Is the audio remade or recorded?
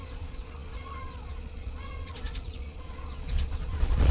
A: remade